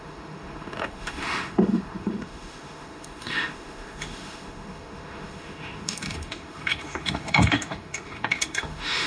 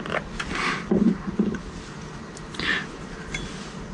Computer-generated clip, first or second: first